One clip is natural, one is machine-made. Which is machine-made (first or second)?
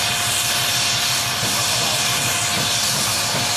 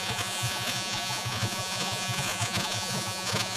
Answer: second